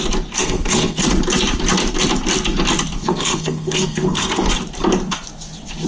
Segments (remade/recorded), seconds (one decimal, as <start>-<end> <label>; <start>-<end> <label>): 0.0-0.4 recorded; 0.4-1.0 remade; 1.0-3.0 recorded; 3.0-4.5 remade; 4.5-5.9 recorded